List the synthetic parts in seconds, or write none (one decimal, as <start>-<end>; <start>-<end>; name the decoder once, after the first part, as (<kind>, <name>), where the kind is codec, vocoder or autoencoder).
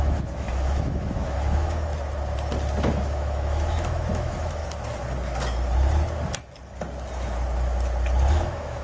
0.0-1.9 (autoencoder, DAC-VAE); 2.8-4.6; 8.3-8.8